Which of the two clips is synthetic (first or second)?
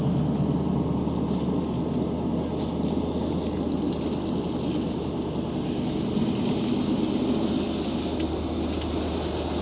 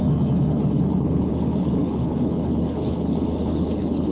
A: second